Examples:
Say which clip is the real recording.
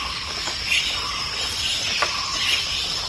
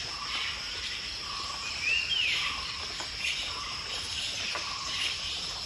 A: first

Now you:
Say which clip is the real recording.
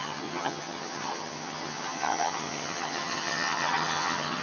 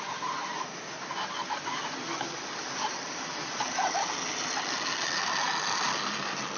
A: second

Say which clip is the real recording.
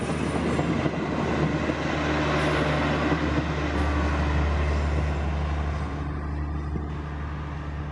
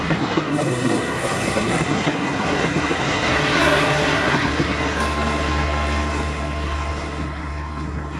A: first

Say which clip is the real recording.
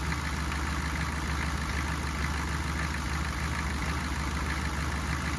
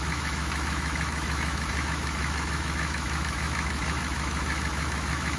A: first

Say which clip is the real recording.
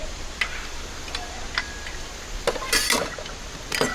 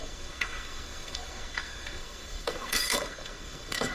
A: first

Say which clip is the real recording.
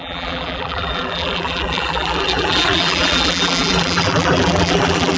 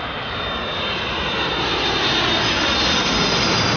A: second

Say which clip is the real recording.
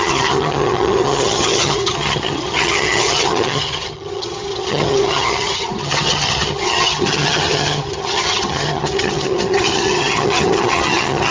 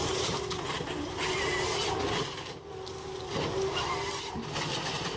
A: second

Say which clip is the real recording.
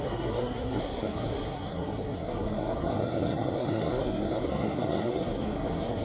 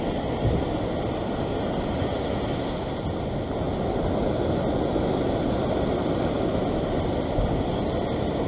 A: second